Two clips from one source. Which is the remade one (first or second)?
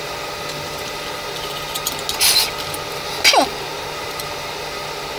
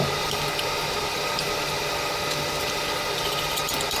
second